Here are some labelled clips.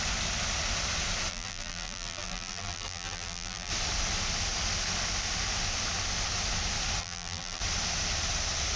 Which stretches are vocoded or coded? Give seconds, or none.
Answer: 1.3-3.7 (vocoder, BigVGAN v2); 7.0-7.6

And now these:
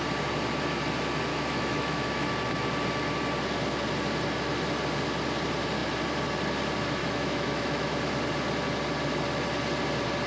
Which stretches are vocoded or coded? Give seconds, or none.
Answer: 1.3-2.3 (autoencoder, DAC-VAE); 7.0-8.0

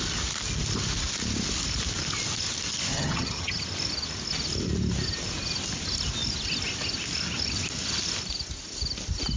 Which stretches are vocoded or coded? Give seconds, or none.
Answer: 2.9-3.6 (vocoder, HiFi-GAN)